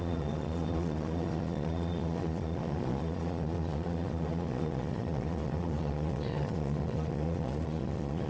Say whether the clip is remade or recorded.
remade